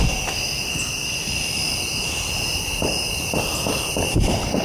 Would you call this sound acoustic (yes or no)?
yes